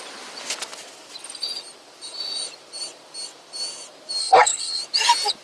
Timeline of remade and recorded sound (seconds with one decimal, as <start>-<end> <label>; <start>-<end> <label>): 0.0-4.2 recorded; 4.2-4.8 remade; 4.8-5.4 recorded